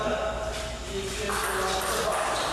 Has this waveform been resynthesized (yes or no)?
no